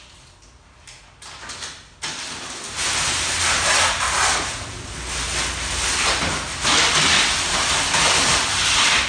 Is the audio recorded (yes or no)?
yes